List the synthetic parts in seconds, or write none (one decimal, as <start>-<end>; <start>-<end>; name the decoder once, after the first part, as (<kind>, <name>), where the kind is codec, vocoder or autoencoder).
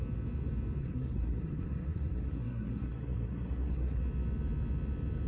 0.8-4.0 (codec, SNAC)